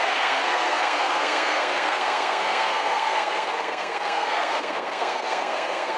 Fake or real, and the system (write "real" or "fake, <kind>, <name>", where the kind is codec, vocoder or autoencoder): fake, codec, SNAC